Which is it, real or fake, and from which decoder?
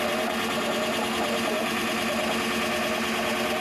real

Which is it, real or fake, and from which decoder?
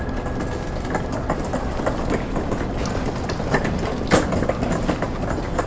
real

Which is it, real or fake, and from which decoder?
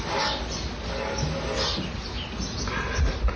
real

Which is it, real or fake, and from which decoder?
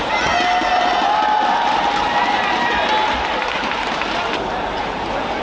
real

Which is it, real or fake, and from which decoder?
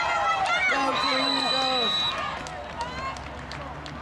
real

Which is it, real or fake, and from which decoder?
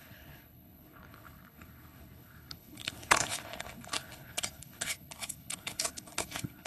fake, codec, HILCodec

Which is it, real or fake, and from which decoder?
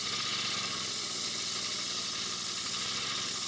real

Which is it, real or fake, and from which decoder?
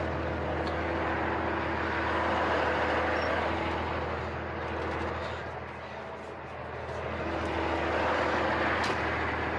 real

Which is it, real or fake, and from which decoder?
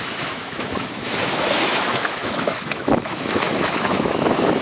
fake, autoencoder, DAC-VAE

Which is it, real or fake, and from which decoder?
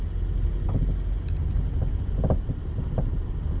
real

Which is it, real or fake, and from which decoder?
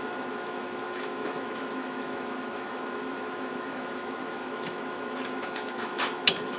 fake, autoencoder, DAC-VAE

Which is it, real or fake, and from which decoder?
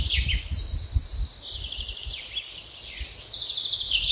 real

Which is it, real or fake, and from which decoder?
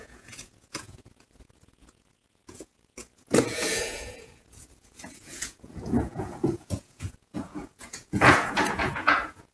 fake, vocoder, Vocos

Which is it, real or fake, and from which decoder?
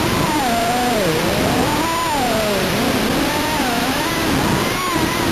real